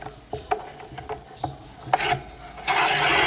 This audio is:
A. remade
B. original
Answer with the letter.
B